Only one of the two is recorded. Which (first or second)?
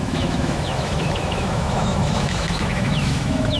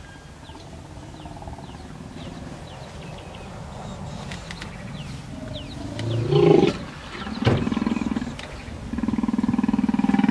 second